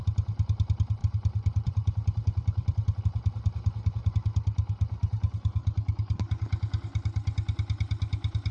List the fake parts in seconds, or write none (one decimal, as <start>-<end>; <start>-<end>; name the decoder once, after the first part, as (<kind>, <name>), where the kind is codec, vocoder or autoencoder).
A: 1.0-3.0 (vocoder, BigVGAN v2)